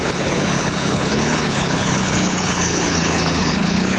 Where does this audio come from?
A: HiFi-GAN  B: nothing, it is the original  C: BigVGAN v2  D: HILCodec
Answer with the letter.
D